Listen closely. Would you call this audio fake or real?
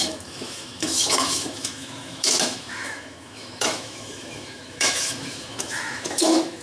fake